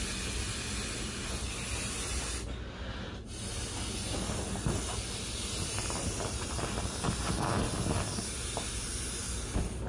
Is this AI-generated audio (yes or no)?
no